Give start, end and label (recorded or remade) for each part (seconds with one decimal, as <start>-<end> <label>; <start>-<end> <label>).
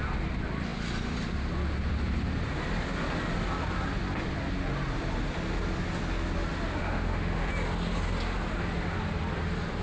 0.0-6.8 recorded; 6.8-7.5 remade; 7.5-9.8 recorded